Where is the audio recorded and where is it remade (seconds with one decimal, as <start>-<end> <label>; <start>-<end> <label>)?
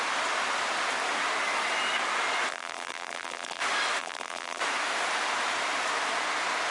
0.0-2.5 recorded; 2.5-3.6 remade; 3.6-4.0 recorded; 4.0-4.6 remade; 4.6-6.7 recorded